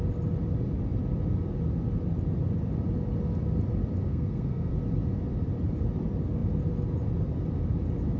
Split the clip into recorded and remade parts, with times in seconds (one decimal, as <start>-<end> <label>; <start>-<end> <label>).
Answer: 0.0-4.1 recorded; 4.1-4.7 remade; 4.7-8.2 recorded

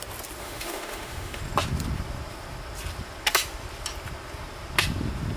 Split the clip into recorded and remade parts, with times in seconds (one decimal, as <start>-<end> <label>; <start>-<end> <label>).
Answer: 0.0-0.4 recorded; 0.4-1.4 remade; 1.4-5.4 recorded